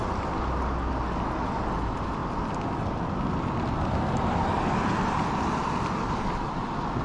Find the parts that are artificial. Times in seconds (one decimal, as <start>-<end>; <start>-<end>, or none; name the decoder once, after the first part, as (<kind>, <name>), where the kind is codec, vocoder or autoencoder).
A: none